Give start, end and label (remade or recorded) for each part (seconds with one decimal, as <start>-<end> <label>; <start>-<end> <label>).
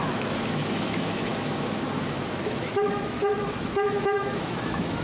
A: 0.0-5.0 remade